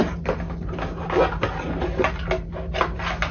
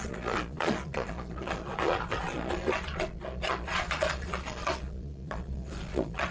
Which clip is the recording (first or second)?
first